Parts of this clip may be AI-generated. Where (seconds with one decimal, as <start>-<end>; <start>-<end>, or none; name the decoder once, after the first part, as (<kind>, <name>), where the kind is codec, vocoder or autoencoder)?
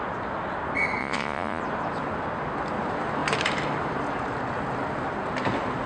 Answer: 1.0-1.6 (vocoder, Vocos)